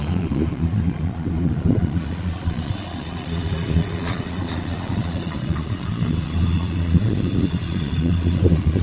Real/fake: fake